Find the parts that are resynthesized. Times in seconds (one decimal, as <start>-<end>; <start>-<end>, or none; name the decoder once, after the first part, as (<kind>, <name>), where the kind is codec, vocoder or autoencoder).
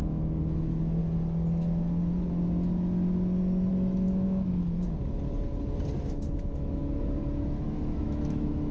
0.0-1.0 (autoencoder, DAC-VAE); 3.7-4.6; 6.0-6.8; 7.5-8.7